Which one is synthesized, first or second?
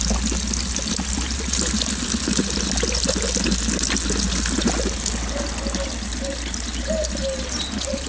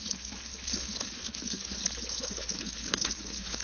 second